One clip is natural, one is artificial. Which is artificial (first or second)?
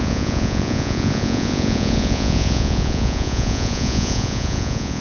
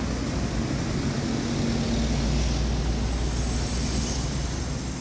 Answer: first